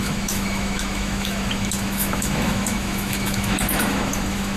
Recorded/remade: remade